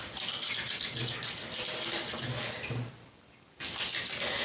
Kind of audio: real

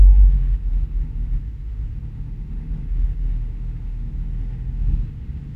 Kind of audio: fake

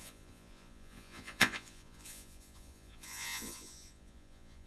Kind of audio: fake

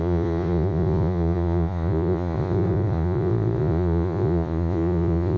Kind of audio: fake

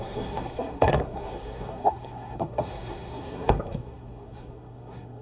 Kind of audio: fake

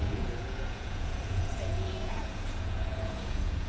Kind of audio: fake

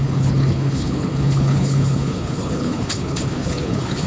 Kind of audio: fake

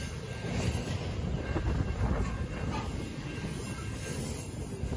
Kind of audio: real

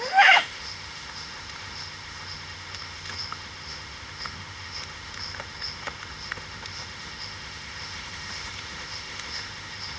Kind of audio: fake